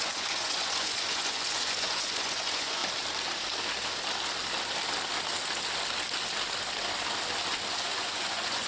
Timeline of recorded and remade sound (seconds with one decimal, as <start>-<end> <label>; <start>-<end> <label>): 0.0-2.8 remade; 2.8-7.7 recorded; 7.7-8.7 remade